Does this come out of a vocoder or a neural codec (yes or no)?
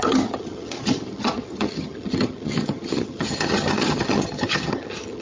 yes